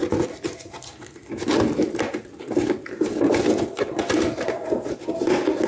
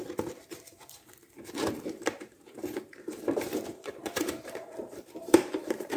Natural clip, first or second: first